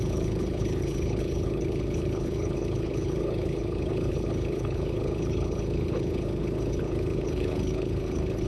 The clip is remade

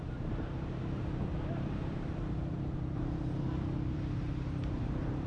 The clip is remade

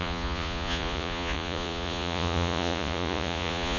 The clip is remade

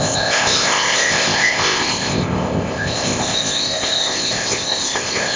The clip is remade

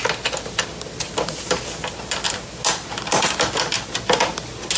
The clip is recorded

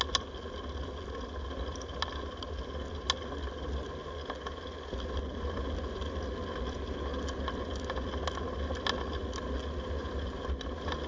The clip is recorded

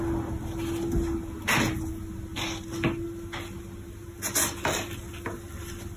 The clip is recorded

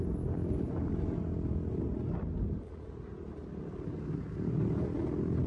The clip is recorded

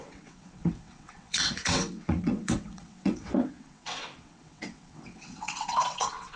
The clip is remade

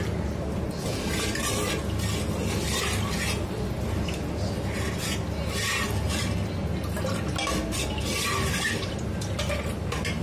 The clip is recorded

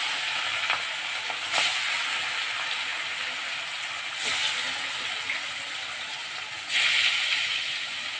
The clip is recorded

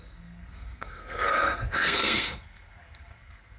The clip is remade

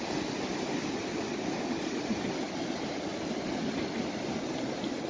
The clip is recorded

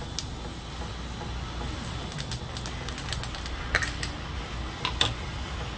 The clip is recorded